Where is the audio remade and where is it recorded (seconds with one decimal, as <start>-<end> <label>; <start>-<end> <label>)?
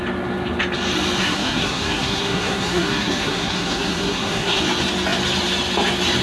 0.0-1.2 recorded; 1.2-4.6 remade; 4.6-6.2 recorded